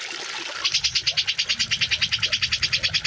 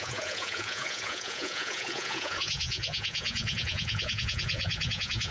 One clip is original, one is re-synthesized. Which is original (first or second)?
first